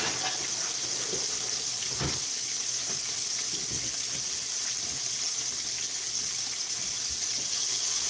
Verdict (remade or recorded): recorded